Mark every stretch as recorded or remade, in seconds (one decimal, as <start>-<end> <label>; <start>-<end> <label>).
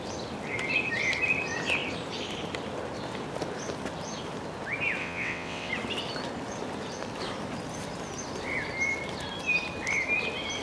0.0-5.0 recorded; 5.0-5.7 remade; 5.7-10.6 recorded